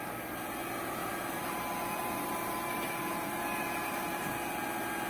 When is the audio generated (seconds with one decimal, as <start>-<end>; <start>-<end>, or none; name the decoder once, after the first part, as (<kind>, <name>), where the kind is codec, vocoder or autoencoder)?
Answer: 1.0-4.1 (vocoder, BigVGAN v2)